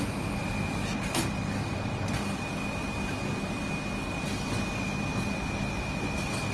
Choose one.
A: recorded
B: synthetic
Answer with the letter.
A